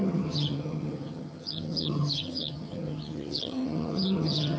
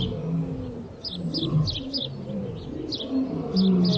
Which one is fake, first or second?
first